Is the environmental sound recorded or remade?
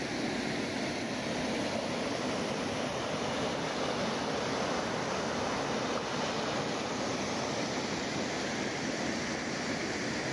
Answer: recorded